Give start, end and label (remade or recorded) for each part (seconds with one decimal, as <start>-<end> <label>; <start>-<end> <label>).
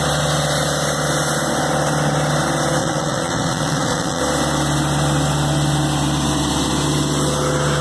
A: 0.0-2.8 recorded; 2.8-4.2 remade; 4.2-7.8 recorded